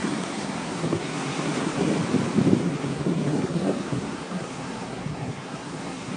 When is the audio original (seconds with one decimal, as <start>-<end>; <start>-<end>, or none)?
1.9-2.6